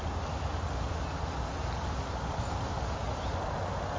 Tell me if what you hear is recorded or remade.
recorded